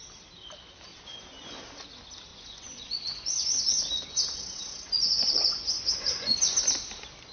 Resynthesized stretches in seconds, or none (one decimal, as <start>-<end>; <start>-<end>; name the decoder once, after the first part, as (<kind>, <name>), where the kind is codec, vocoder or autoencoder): 0.9-1.6 (vocoder, Vocos); 2.3-6.6